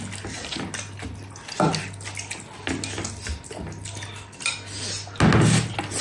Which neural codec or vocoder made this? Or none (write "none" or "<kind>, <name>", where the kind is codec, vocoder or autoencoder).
none